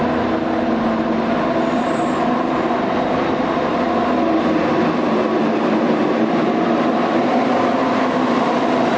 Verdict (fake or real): real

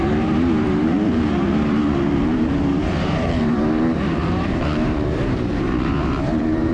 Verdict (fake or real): fake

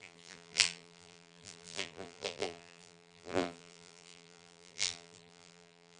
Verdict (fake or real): fake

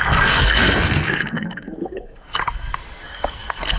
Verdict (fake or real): fake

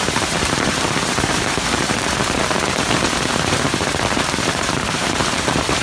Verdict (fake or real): fake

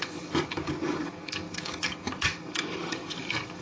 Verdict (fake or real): fake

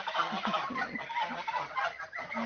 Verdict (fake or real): real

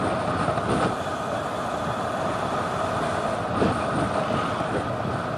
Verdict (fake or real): real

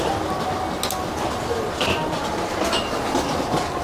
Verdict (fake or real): real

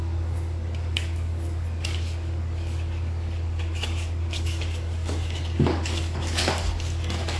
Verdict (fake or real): fake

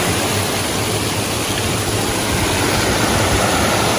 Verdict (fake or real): real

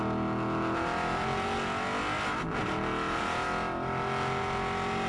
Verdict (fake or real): real